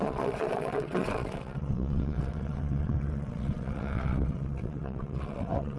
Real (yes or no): no